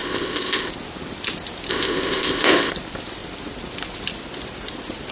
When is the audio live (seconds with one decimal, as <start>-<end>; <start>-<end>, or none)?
0.7-1.7; 2.7-5.1